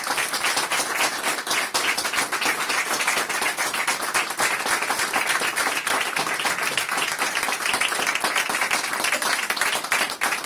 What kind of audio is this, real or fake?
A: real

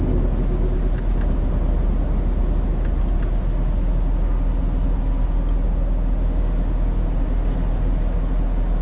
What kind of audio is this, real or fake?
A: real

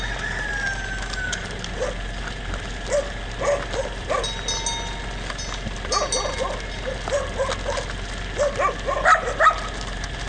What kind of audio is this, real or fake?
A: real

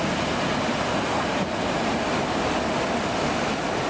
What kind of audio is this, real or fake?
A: real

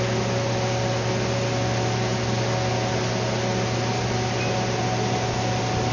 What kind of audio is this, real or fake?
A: real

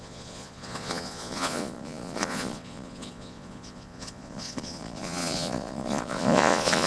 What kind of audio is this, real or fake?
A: fake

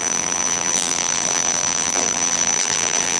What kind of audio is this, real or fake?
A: fake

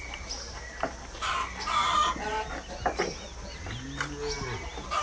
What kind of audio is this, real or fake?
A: real